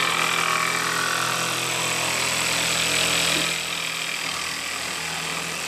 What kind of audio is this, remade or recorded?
recorded